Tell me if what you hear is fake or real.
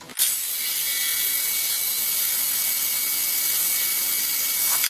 real